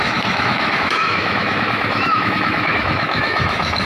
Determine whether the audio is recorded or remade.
remade